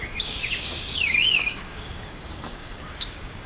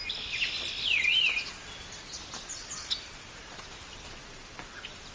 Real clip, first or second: second